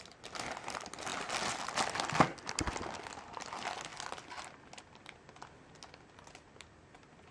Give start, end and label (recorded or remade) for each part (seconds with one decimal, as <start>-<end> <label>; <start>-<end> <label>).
0.0-7.3 recorded

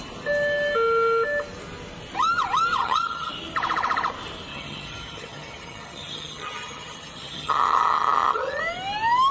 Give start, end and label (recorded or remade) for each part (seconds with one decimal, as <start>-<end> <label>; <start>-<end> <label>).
0.0-2.8 recorded; 2.8-3.3 remade; 3.3-4.5 recorded; 4.5-8.6 remade; 8.6-9.3 recorded